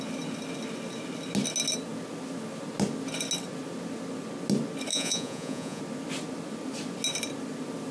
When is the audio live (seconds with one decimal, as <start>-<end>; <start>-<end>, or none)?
0.0-4.9; 5.8-7.9